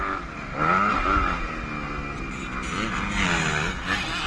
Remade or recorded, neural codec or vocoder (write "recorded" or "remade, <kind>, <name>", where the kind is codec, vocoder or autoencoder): recorded